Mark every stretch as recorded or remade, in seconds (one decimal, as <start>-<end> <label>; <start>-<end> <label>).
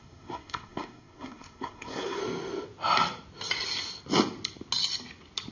0.0-2.2 remade; 2.2-5.5 recorded